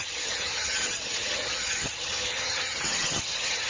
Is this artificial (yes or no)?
yes